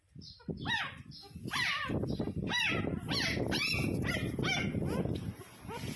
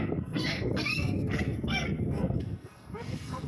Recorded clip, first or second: first